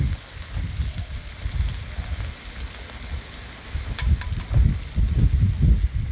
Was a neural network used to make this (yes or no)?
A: no